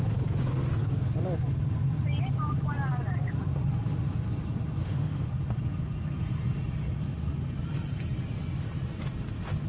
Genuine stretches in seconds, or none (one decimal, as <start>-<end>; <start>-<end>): 0.0-4.8; 5.3-9.7